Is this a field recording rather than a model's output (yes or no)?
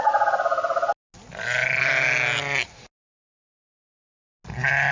yes